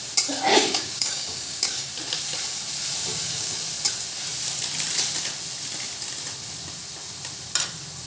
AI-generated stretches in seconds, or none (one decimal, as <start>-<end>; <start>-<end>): 0.5-1.9; 3.1-3.6